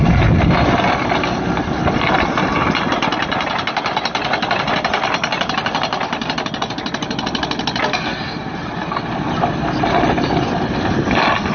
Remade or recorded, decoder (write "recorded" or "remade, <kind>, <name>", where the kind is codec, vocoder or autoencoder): recorded